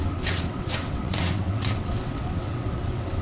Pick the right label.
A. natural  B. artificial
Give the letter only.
B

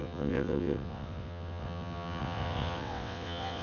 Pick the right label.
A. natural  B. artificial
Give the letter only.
B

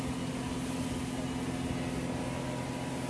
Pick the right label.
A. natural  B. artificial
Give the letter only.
A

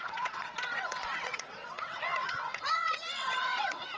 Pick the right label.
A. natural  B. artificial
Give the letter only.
B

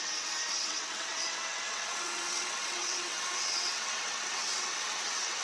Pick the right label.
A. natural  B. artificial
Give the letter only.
B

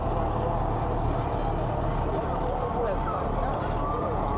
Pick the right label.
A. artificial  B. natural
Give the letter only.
B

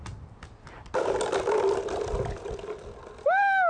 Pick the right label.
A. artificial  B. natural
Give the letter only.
B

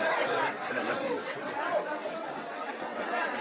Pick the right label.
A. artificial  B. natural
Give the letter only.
A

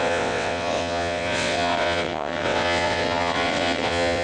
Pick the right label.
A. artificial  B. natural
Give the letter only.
A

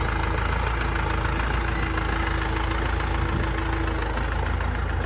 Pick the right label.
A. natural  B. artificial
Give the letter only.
A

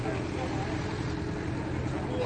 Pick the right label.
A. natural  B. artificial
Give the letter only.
A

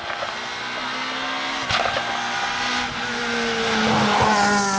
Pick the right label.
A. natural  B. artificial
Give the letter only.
A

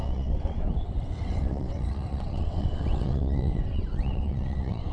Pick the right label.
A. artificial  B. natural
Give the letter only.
A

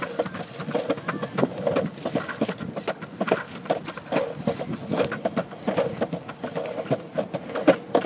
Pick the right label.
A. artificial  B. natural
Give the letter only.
B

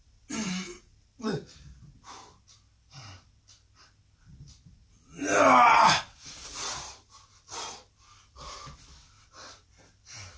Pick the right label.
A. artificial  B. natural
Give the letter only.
B